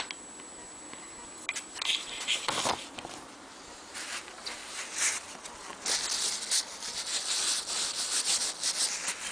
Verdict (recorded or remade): recorded